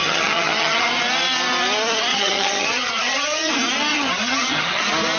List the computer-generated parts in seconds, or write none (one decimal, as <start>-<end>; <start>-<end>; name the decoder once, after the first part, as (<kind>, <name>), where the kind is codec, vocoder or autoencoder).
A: 0.0-1.0 (vocoder, HiFi-GAN); 2.1-3.5; 3.9-4.8